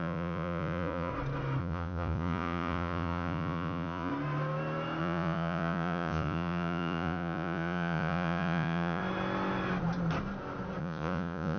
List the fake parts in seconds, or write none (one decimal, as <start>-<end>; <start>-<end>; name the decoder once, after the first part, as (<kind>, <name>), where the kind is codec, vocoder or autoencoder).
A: 0.0-1.1 (vocoder, Vocos); 1.6-4.1; 5.0-9.0; 10.8-11.6